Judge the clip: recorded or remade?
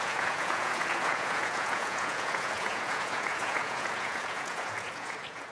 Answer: remade